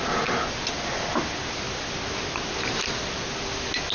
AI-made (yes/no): no